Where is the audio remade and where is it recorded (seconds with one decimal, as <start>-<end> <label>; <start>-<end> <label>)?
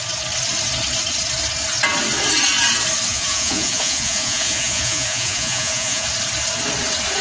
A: 0.0-3.1 recorded; 3.1-6.1 remade; 6.1-7.2 recorded